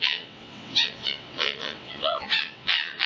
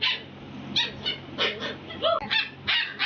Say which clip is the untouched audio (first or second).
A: second